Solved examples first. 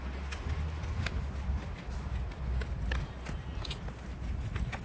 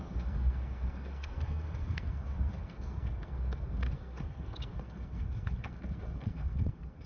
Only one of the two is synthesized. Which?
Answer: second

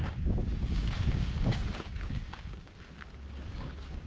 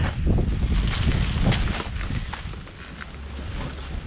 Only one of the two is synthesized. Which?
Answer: first